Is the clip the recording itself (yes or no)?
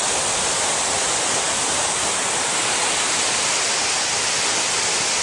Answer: yes